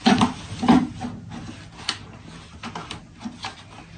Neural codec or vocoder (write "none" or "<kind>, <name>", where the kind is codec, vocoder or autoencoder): none